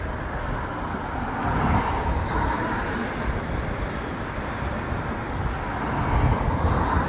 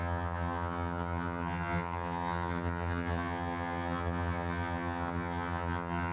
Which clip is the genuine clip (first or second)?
first